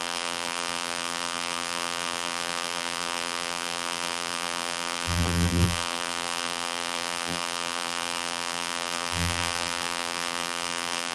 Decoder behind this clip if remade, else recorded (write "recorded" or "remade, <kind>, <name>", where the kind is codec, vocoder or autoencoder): remade, vocoder, BigVGAN v2